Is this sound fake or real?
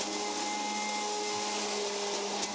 real